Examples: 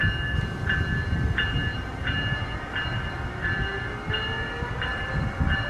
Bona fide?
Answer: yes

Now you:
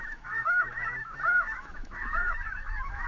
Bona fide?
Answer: no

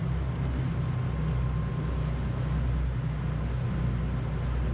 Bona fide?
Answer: yes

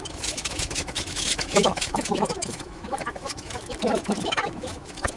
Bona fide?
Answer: no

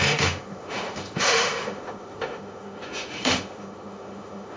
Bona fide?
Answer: no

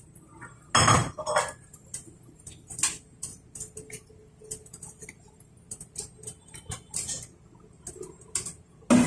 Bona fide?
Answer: yes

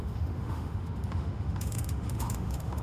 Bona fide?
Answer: no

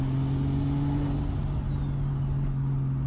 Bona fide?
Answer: yes